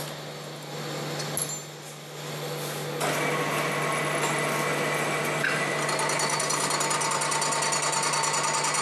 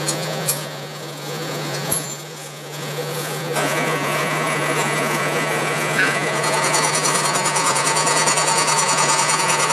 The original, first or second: first